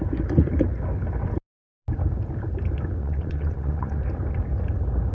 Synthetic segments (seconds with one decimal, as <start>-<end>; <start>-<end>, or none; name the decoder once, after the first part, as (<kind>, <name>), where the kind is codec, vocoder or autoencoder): 3.0-4.0 (vocoder, WaveNeXt)